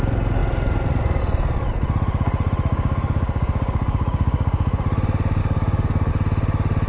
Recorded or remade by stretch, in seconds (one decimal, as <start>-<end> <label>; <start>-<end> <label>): 0.0-2.7 recorded; 2.7-4.8 remade; 4.8-5.4 recorded; 5.4-6.1 remade; 6.1-6.9 recorded